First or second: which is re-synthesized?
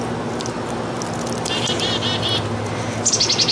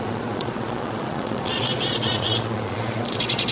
second